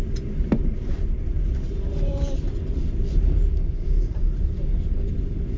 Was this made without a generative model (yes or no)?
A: no